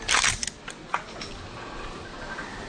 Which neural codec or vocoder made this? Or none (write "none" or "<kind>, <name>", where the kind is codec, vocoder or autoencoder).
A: none